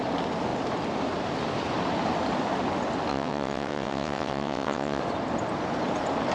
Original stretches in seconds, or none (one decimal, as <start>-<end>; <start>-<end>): 0.0-3.1; 5.0-6.3